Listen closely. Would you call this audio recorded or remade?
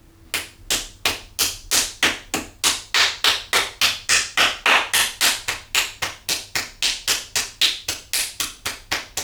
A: recorded